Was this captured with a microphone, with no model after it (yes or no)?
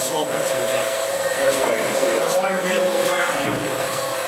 no